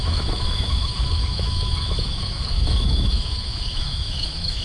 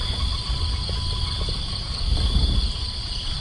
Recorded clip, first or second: second